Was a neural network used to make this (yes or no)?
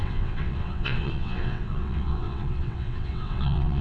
yes